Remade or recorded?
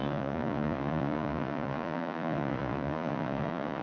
remade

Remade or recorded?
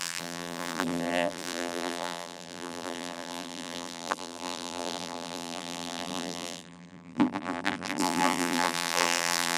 remade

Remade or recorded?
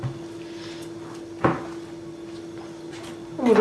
recorded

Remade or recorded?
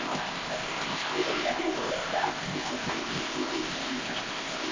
remade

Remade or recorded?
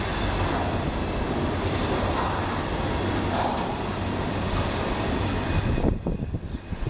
recorded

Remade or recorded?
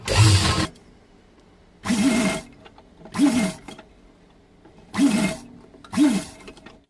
recorded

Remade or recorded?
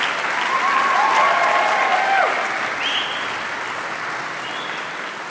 recorded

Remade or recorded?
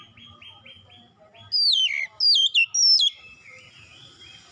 recorded